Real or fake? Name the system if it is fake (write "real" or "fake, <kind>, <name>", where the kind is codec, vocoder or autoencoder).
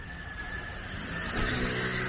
real